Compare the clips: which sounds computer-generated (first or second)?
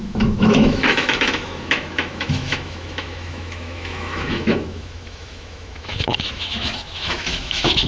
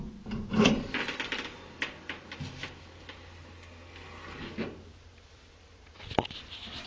first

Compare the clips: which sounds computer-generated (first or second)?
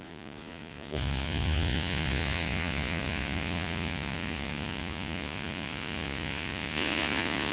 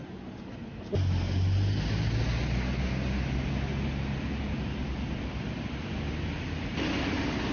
first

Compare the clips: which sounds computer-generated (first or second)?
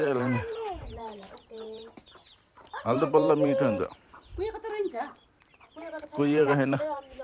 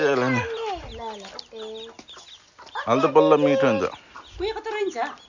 first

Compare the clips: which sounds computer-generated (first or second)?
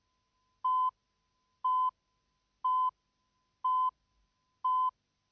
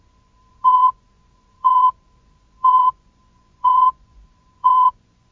second